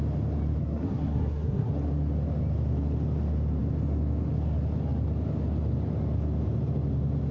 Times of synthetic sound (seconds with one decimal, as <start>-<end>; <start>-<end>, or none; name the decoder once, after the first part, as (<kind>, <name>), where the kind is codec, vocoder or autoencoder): 0.6-1.7 (codec, SNAC)